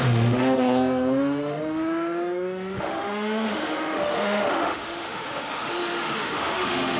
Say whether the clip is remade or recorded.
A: remade